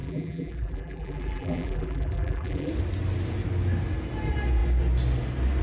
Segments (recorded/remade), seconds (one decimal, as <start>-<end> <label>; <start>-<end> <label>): 0.0-2.7 remade; 2.7-5.6 recorded